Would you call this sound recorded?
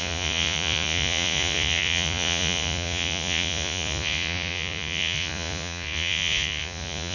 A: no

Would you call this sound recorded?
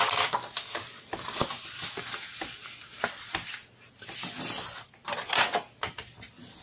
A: yes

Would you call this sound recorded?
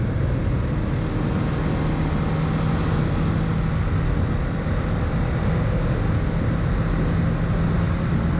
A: yes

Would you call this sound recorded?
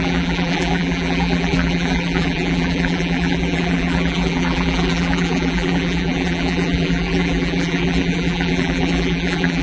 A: no